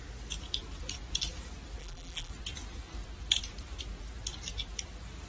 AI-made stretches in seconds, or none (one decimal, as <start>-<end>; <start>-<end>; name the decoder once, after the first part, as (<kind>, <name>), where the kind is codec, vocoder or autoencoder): 1.8-2.3 (vocoder, BigVGAN v2)